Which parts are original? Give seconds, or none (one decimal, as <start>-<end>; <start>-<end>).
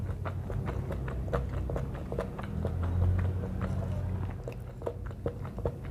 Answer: 0.0-5.9